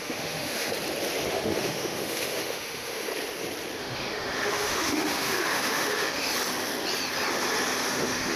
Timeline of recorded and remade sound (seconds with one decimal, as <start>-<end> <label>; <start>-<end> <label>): 0.0-0.7 remade; 0.7-1.3 recorded; 1.3-3.1 remade; 3.1-3.8 recorded; 3.8-6.3 remade; 6.3-7.9 recorded; 7.9-8.4 remade